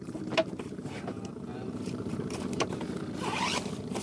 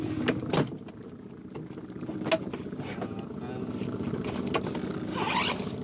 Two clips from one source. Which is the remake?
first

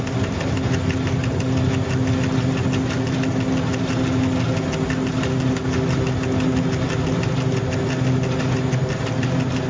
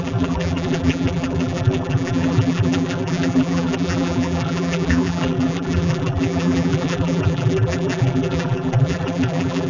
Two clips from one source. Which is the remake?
second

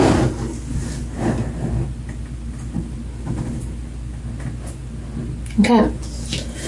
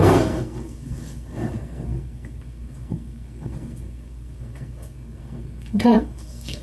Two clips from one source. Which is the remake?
second